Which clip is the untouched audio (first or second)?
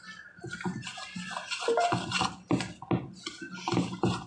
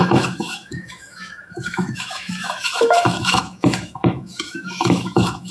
first